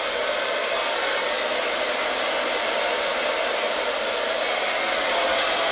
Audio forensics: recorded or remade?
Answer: recorded